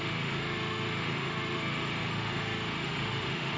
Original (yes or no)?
no